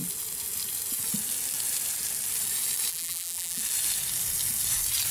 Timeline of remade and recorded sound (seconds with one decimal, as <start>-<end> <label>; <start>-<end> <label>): 0.0-2.9 recorded; 2.9-3.6 remade; 3.6-5.1 recorded